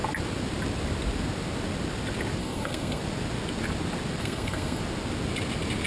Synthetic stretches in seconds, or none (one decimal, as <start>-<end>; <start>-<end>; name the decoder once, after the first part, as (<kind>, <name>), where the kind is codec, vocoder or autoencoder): 2.4-3.0 (codec, SNAC); 4.2-4.8